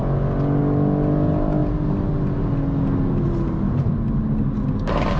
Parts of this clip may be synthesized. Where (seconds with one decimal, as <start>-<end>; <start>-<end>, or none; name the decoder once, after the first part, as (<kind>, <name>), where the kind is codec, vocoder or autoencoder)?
none